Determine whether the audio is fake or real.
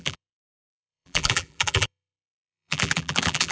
fake